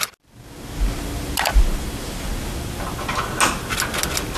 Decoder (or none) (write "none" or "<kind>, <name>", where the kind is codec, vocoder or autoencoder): none